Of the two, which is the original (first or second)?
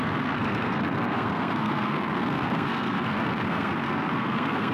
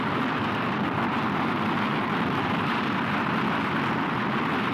second